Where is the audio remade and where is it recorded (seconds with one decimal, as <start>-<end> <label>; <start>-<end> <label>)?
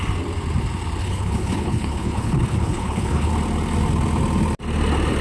0.0-1.0 recorded; 1.0-3.3 remade; 3.3-5.2 recorded